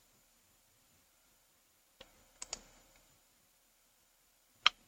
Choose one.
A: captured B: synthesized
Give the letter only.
A